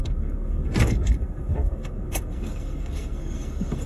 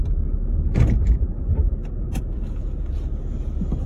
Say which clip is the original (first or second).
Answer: second